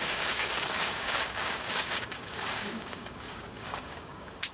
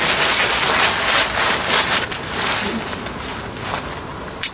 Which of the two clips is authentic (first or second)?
second